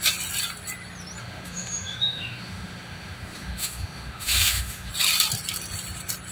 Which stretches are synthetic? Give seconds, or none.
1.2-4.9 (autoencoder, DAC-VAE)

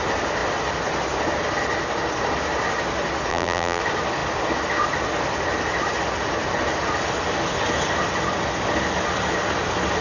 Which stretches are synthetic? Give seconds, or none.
3.3-3.8 (vocoder, BigVGAN v2)

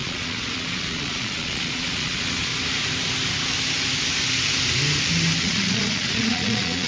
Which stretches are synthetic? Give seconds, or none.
0.0-2.5 (vocoder, Vocos); 5.4-6.9

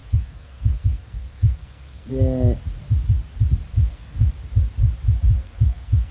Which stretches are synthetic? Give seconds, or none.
0.0-2.1 (codec, SNAC); 3.7-4.3; 5.4-6.1

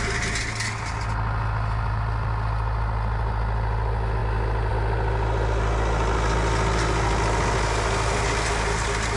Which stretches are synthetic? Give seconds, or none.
none